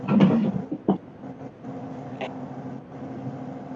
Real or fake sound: real